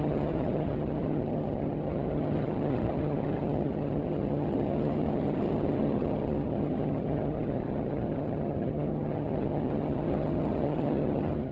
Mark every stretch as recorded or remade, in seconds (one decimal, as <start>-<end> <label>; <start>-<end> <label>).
0.0-11.5 remade